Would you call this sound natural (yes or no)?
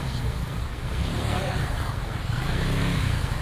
no